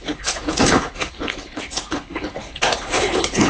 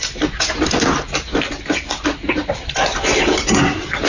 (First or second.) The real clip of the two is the second